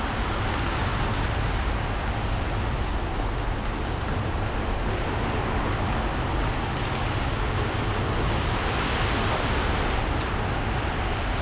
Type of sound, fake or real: real